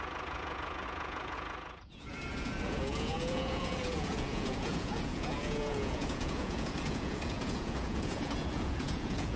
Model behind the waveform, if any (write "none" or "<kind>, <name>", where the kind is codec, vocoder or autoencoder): vocoder, Vocos